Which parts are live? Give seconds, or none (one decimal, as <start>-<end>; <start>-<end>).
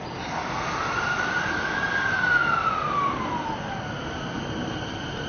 0.0-5.3